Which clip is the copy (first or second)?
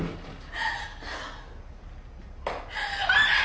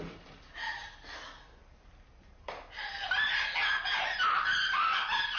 second